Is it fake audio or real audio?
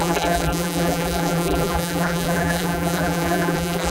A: fake